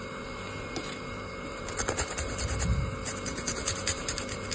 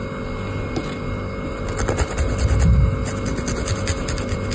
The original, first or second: second